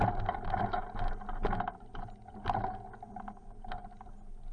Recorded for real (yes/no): yes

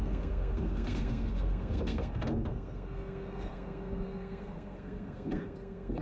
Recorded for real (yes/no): no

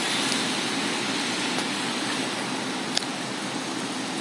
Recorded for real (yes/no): yes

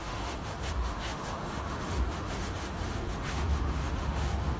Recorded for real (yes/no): no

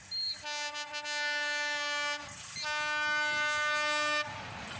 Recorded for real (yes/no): yes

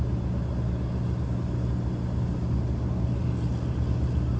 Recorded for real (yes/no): yes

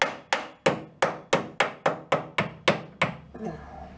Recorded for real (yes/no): yes